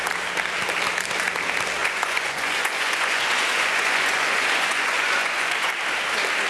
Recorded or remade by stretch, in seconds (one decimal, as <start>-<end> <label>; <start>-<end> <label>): 0.0-1.8 recorded; 1.8-5.7 remade; 5.7-6.5 recorded

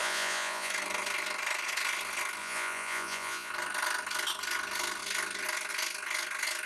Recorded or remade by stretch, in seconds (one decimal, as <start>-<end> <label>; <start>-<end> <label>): 0.0-0.7 remade; 0.7-2.4 recorded; 2.4-3.5 remade; 3.5-6.7 recorded

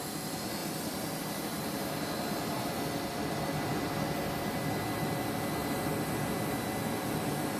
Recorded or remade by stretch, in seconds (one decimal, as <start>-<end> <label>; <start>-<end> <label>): 0.0-7.6 recorded

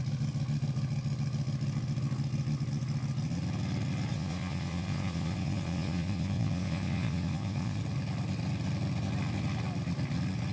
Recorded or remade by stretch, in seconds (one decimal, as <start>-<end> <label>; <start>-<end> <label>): 0.0-4.1 recorded; 4.1-7.8 remade; 7.8-10.5 recorded

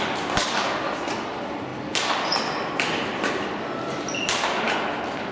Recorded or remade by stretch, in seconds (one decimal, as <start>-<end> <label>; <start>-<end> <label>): 0.0-5.3 recorded

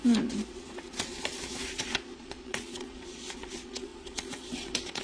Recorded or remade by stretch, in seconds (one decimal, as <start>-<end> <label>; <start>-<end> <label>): 0.0-0.5 recorded; 0.5-5.0 remade